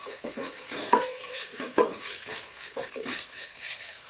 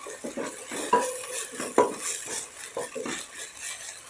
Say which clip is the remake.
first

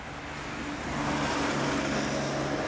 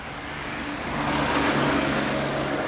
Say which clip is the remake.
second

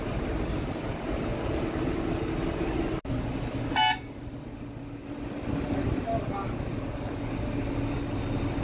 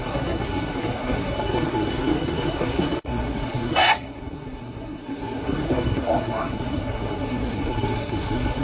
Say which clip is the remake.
second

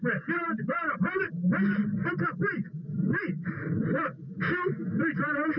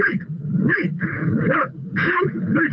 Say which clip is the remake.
second